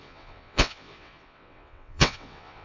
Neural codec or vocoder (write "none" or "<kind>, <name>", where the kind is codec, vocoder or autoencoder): vocoder, WaveNeXt